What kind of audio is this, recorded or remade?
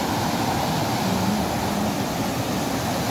recorded